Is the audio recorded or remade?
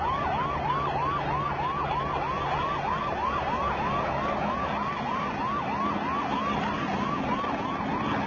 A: recorded